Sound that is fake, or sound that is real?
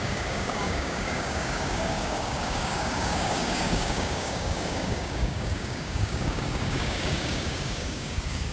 fake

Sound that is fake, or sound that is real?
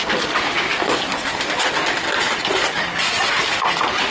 real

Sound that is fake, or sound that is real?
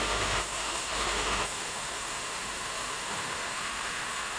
fake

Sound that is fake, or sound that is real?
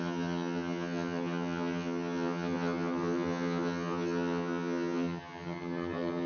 fake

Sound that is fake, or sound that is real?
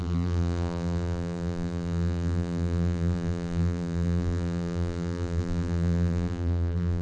fake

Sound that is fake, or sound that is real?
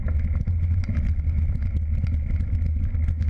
real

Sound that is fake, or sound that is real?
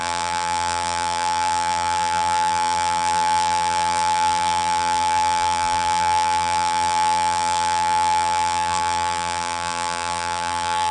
fake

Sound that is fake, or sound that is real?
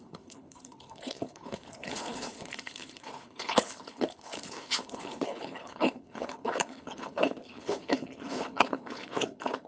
fake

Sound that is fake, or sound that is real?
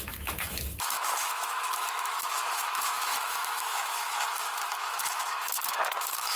fake